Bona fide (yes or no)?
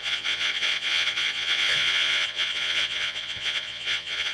no